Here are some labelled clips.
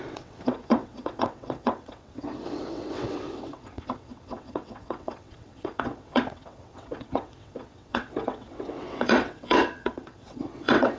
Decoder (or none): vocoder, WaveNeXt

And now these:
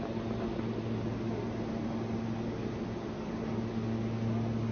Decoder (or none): none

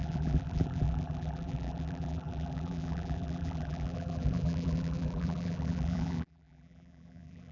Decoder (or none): vocoder, BigVGAN v2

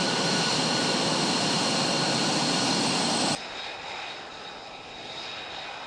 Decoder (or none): none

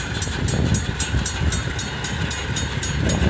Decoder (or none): none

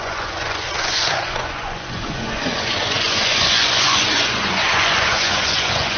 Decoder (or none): vocoder, Vocos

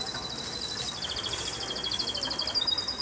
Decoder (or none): none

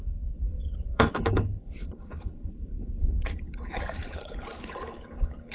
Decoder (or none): codec, HILCodec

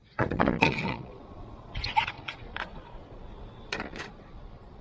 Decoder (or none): vocoder, Vocos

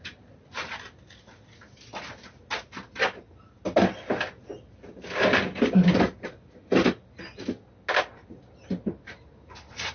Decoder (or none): none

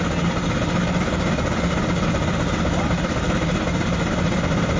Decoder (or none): none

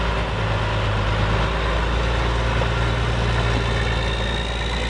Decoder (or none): none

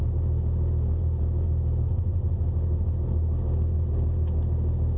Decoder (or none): none